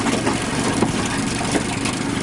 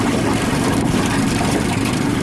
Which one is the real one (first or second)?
first